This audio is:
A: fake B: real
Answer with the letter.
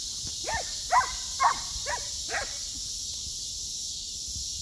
B